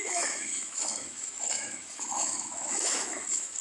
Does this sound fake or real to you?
fake